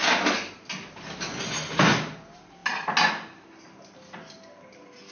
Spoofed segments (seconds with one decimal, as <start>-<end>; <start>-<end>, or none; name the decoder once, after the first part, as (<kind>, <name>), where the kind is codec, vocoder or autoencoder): none